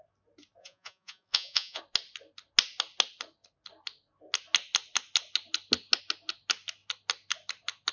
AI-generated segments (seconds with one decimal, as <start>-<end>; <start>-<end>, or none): 0.6-1.8

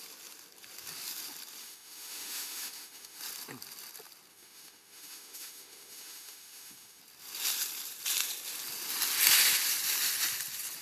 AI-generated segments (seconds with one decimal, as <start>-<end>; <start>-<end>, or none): 1.6-3.2; 4.3-7.0

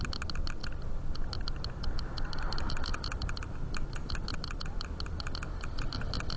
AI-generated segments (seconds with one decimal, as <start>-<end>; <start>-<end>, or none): none

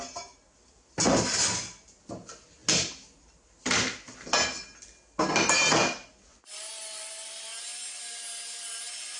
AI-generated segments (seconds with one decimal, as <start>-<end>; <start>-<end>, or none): none